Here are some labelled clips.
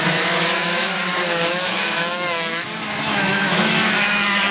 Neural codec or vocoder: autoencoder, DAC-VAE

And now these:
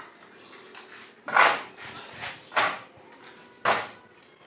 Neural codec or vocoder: none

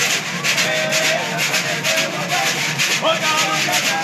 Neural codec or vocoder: none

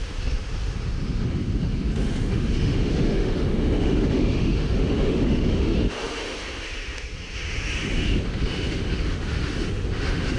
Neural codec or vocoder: autoencoder, DAC-VAE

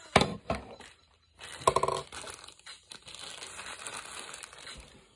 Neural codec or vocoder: none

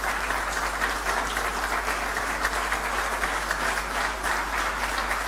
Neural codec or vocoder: none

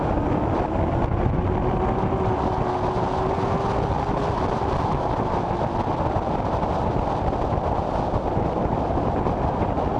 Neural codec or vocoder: none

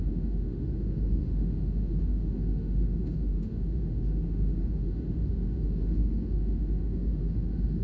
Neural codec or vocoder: autoencoder, DAC-VAE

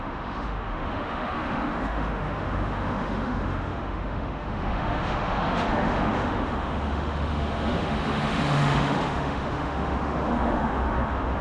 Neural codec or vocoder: autoencoder, DAC-VAE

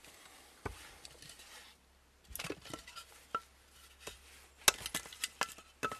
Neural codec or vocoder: none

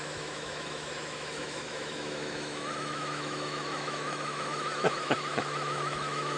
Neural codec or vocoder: autoencoder, DAC-VAE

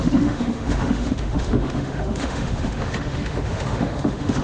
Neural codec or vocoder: autoencoder, DAC-VAE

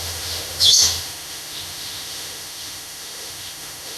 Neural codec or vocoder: autoencoder, DAC-VAE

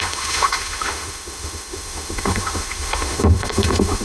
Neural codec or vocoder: autoencoder, DAC-VAE